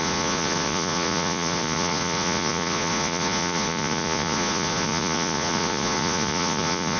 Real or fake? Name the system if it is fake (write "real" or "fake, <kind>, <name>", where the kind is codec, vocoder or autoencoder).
fake, vocoder, Vocos